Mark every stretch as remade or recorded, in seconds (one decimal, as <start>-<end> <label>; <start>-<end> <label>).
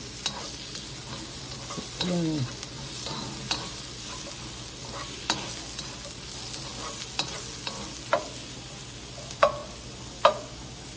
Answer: 0.0-11.0 recorded